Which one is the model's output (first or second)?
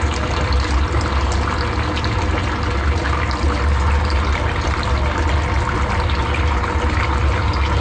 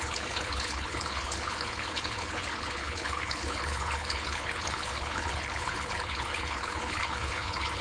second